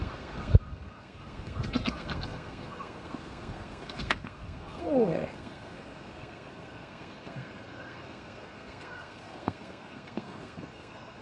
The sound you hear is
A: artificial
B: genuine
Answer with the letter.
A